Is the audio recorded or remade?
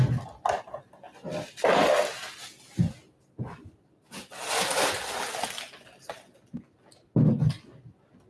recorded